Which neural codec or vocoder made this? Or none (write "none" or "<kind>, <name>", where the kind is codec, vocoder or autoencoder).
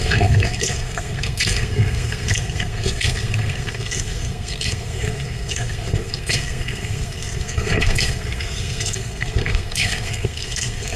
codec, SNAC